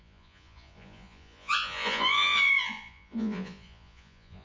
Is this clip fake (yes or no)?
yes